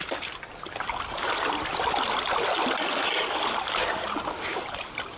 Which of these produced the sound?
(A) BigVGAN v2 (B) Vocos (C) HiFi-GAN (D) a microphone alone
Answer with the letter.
D